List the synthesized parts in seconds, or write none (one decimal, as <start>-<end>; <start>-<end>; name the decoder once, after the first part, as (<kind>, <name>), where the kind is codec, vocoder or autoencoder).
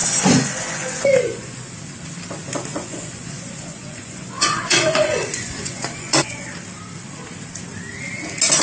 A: 0.0-1.7 (vocoder, Vocos); 2.7-6.5